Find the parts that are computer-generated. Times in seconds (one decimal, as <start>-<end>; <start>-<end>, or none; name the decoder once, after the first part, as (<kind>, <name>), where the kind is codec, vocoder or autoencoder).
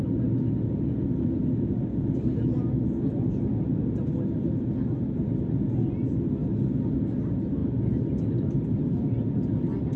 none